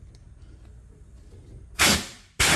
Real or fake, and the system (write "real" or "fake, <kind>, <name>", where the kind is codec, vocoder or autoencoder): real